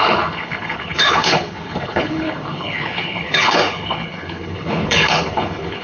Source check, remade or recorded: remade